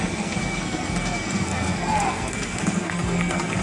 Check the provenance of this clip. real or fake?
fake